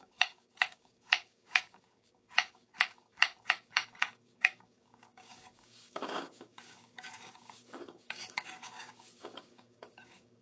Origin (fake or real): fake